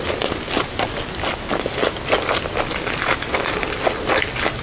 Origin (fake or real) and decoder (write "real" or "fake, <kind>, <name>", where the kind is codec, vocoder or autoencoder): real